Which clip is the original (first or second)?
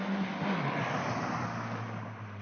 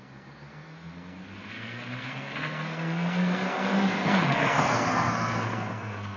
first